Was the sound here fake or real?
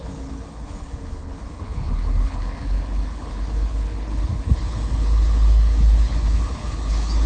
fake